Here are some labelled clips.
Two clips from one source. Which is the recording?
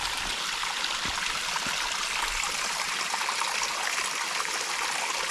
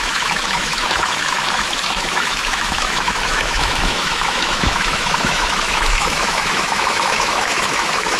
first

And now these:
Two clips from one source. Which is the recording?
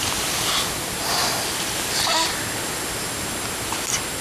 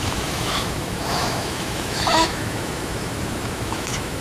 first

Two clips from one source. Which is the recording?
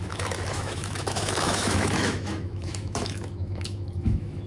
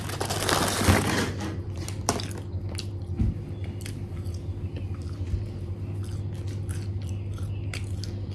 second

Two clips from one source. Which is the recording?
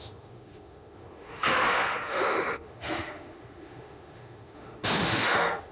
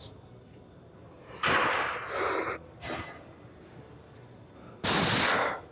second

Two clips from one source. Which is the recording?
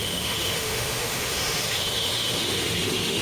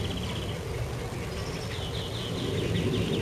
second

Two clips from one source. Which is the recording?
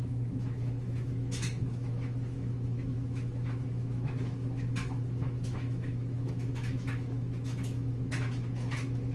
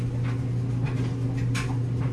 second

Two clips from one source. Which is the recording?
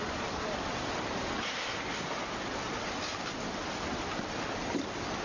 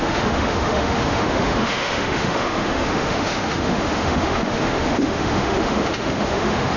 first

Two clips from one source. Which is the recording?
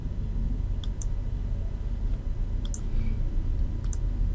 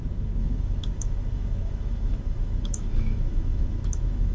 first